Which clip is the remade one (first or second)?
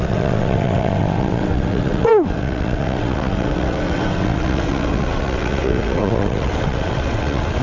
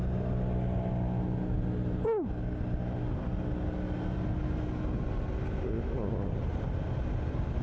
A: first